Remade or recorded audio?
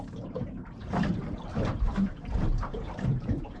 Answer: remade